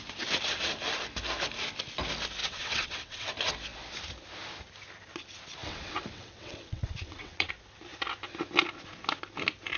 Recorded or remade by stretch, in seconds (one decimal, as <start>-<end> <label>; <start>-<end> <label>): 0.0-2.4 recorded; 2.4-3.3 remade; 3.3-5.6 recorded; 5.6-7.5 remade; 7.5-9.8 recorded